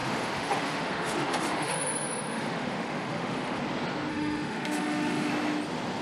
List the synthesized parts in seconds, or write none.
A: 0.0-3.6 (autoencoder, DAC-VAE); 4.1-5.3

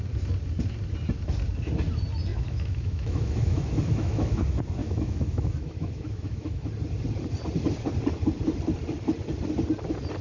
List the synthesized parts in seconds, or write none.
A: 2.3-4.3 (autoencoder, DAC-VAE); 4.8-6.7

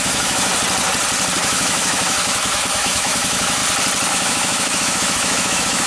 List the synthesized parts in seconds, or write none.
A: 0.0-0.5 (autoencoder, DAC-VAE); 1.4-3.6; 4.1-5.9

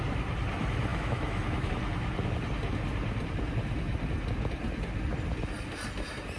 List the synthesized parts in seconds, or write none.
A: 0.9-1.7 (autoencoder, DAC-VAE)

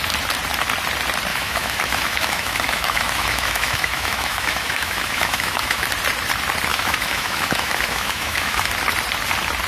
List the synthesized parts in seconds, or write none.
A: 1.3-5.9 (autoencoder, DAC-VAE); 6.7-8.7